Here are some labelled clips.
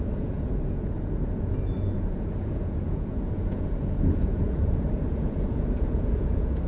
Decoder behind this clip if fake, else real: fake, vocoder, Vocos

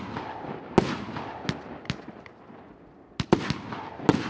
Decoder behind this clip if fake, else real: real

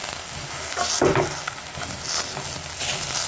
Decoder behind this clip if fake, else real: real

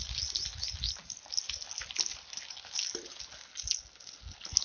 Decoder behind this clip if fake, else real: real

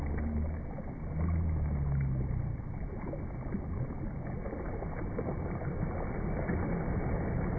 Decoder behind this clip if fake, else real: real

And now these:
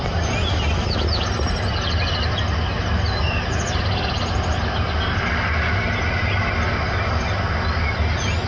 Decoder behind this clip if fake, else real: real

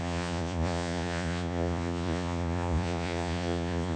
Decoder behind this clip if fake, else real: fake, vocoder, Vocos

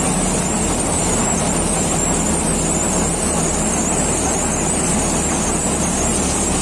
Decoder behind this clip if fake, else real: real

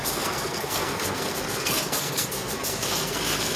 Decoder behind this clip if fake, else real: fake, codec, SNAC